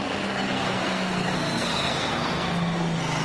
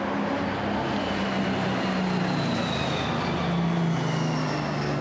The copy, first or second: first